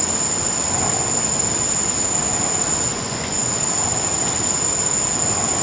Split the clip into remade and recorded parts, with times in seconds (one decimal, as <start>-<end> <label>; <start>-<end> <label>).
0.0-2.9 recorded; 2.9-3.5 remade; 3.5-5.6 recorded